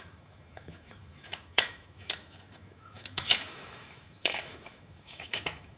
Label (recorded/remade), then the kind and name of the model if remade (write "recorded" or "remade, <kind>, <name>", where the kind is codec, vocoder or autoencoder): remade, autoencoder, DAC-VAE